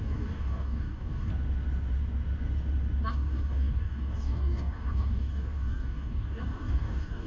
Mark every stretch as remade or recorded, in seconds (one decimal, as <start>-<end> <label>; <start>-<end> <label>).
0.0-1.3 remade; 1.3-3.1 recorded; 3.1-7.3 remade